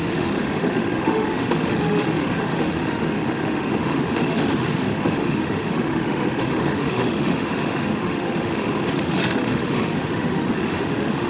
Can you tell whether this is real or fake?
fake